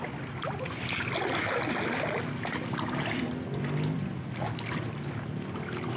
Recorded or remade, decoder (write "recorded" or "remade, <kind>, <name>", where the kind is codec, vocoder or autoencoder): recorded